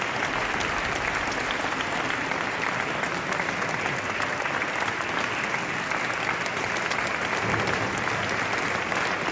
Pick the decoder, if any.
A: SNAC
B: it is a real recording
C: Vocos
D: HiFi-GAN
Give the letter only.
B